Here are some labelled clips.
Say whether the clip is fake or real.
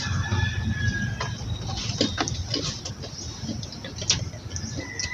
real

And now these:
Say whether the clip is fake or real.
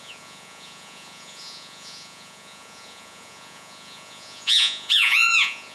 fake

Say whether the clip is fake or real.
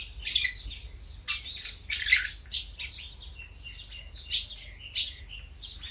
real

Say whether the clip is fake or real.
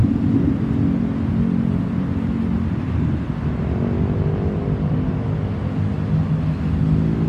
real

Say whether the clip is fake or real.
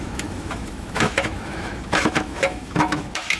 fake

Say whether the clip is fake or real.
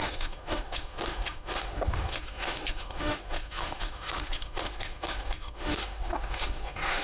fake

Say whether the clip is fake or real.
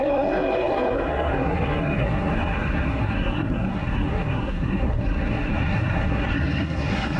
fake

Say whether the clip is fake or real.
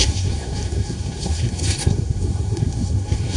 fake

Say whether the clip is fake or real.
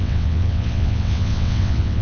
fake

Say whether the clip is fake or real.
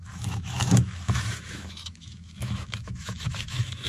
fake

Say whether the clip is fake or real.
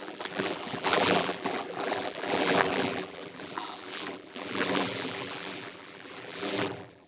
fake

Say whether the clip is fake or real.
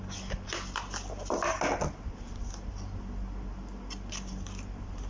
real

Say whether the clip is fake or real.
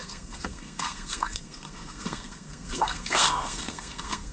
fake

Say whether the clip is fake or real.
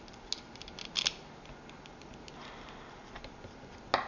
real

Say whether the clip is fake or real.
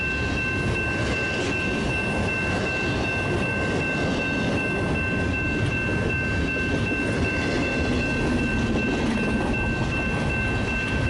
real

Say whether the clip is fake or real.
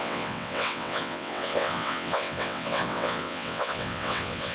fake